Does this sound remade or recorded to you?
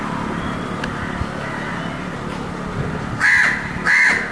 recorded